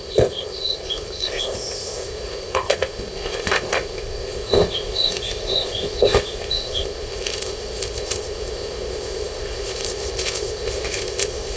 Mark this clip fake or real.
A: fake